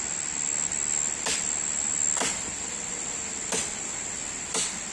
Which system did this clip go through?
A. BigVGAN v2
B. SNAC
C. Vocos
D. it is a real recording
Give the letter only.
D